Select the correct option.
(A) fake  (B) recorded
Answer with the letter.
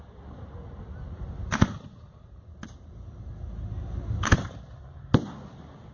B